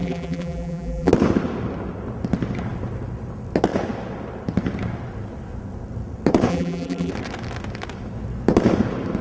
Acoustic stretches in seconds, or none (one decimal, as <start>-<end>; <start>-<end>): 1.1-6.5; 7.1-9.2